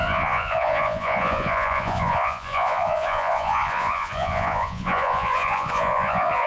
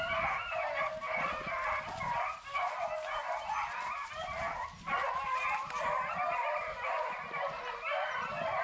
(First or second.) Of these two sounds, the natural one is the second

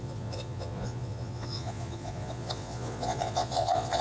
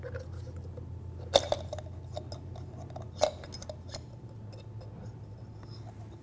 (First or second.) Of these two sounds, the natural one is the second